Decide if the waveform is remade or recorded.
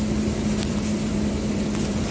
remade